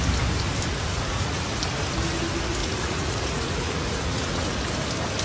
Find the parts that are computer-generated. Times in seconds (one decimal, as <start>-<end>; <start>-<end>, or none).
0.7-1.6; 2.6-4.7